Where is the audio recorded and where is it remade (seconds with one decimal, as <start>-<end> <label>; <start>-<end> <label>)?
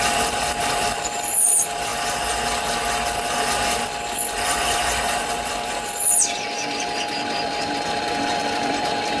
0.0-1.9 remade; 1.9-4.1 recorded; 4.1-9.2 remade